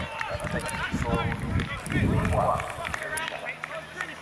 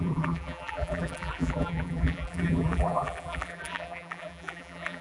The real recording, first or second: first